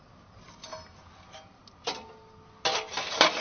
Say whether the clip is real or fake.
real